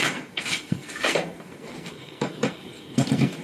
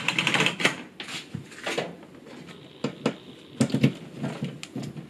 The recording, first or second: second